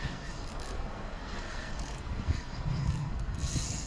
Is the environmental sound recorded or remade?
remade